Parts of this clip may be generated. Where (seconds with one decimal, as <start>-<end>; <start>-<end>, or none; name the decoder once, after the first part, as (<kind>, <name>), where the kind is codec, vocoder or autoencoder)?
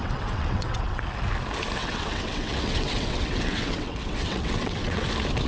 0.0-1.0 (vocoder, WaveNeXt); 1.8-5.1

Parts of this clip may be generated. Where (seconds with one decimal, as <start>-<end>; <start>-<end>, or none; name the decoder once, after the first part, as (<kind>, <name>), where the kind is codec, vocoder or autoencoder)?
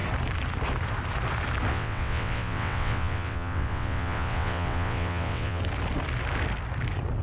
1.7-5.6 (vocoder, WaveNeXt)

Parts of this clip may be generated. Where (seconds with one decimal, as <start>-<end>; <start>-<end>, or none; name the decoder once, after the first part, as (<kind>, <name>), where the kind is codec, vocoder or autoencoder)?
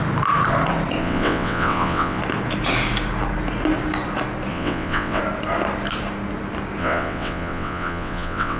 1.0-2.2 (vocoder, WaveNeXt); 4.5-5.2; 6.8-8.6